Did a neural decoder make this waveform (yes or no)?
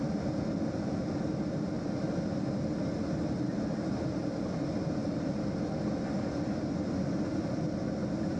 no